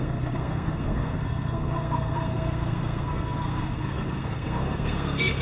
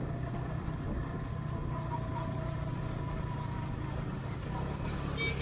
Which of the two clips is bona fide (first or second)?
second